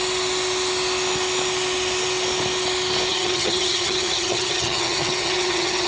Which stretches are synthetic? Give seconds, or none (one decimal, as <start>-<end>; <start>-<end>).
3.1-5.9